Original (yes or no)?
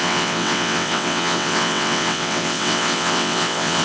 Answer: no